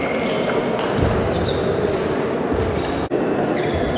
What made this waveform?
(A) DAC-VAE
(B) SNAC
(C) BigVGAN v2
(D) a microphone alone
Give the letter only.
D